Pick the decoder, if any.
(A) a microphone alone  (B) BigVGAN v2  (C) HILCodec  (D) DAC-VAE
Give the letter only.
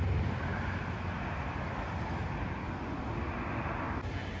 A